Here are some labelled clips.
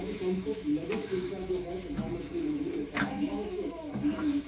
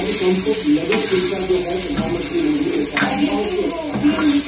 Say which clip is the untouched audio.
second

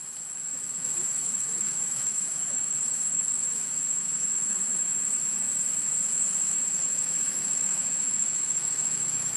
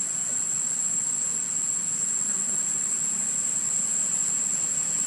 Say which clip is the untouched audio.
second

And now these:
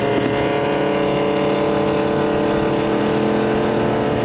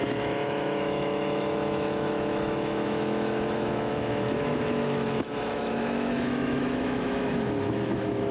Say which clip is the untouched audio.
first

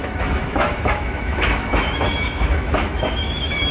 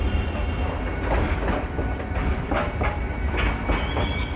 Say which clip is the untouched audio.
second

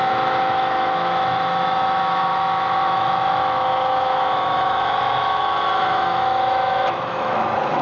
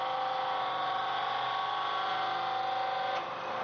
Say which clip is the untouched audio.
second